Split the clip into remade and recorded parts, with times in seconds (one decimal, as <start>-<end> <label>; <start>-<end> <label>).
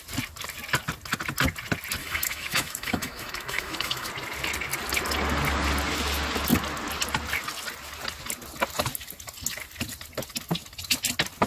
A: 0.0-2.0 recorded; 2.0-4.1 remade; 4.1-11.5 recorded